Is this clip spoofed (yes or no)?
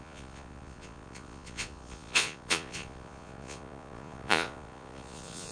yes